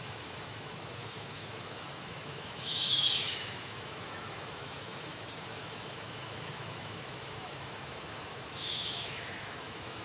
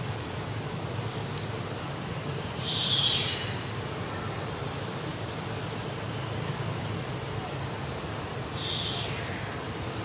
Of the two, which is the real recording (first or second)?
second